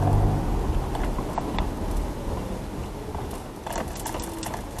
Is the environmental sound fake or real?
real